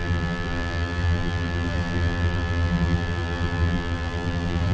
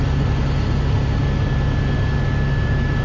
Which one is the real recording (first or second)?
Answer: second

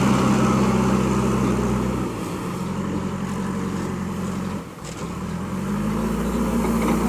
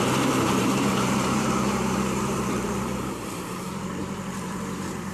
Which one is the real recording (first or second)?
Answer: first